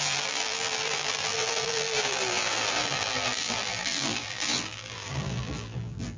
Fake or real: fake